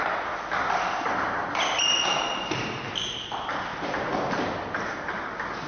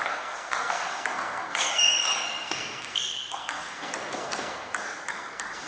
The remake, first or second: second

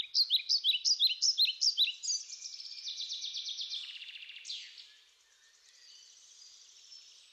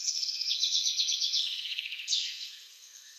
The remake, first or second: second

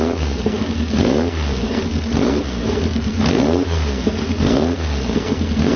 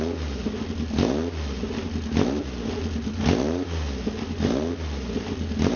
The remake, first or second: first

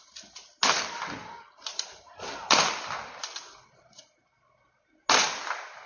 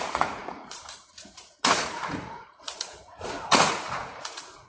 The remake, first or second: second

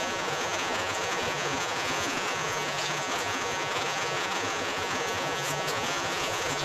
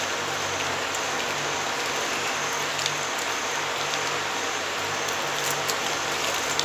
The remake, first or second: first